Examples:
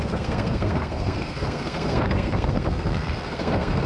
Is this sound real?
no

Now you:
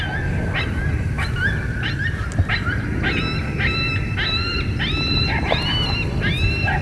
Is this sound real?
yes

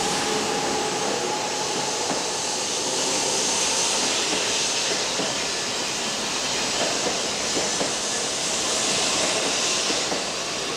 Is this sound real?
yes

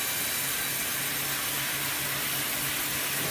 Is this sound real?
yes